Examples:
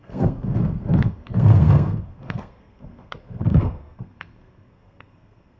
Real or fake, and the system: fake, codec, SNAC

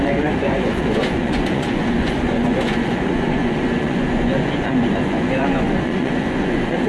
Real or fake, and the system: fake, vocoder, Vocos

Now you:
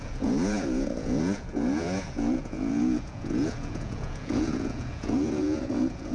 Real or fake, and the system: fake, vocoder, Vocos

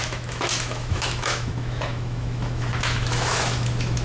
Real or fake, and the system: fake, autoencoder, DAC-VAE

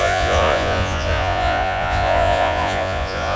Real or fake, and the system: fake, vocoder, Vocos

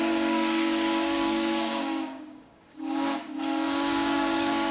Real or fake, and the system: fake, codec, DAC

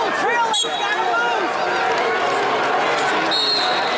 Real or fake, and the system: real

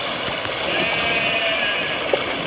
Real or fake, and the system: real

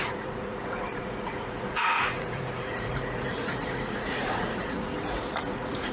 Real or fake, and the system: fake, vocoder, Vocos